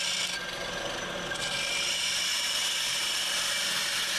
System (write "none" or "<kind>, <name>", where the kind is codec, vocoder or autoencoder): none